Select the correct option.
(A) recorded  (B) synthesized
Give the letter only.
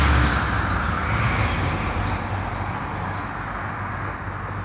A